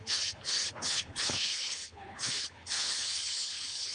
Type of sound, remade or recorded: remade